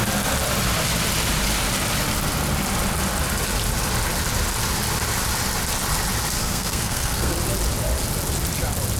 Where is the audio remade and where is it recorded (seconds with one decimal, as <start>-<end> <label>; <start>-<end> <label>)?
0.0-6.4 recorded; 6.4-7.3 remade; 7.3-9.0 recorded